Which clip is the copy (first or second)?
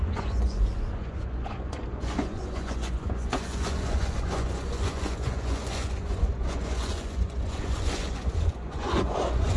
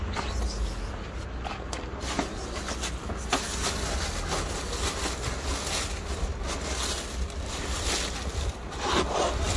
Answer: first